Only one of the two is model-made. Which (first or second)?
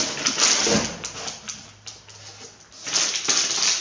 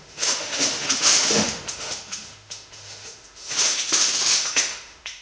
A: second